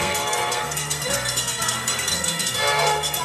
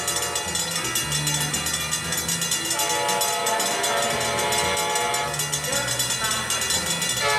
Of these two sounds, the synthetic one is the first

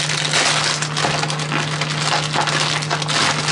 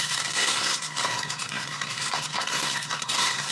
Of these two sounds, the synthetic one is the second